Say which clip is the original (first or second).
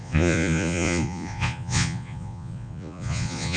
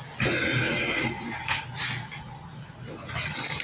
second